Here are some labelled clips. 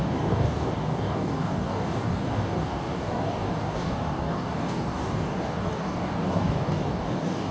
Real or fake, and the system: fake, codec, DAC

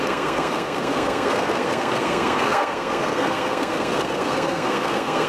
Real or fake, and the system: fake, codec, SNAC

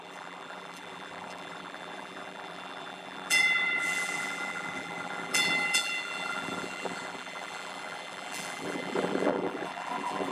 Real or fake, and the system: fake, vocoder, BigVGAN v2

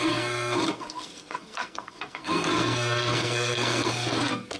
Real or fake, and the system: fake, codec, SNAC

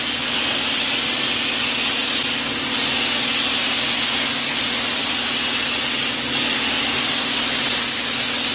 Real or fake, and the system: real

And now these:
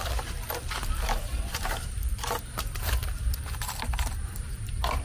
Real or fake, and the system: fake, vocoder, BigVGAN v2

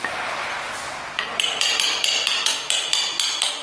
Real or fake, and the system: real